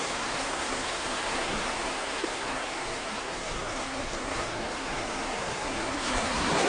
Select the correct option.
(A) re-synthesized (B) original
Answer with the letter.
A